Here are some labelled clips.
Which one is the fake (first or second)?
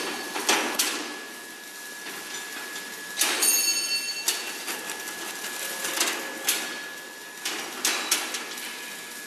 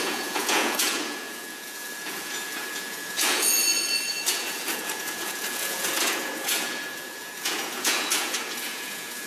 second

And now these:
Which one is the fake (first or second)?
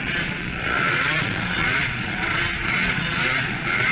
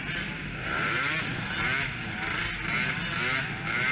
first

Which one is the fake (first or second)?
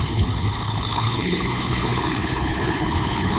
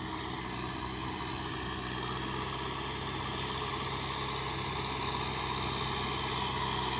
first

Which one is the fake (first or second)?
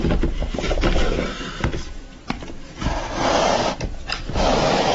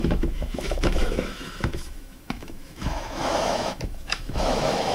second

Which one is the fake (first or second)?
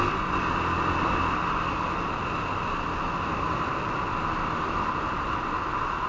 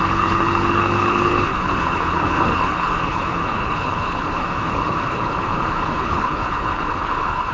second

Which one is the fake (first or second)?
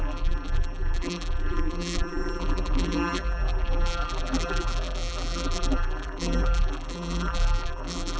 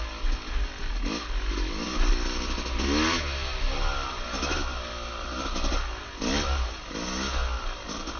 first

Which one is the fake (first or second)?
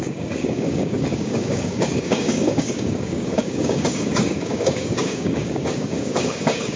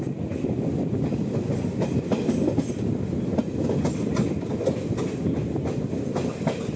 first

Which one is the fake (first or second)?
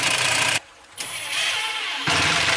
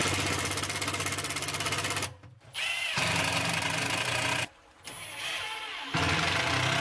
first